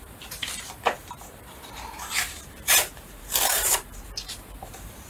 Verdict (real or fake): fake